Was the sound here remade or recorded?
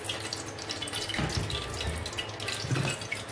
recorded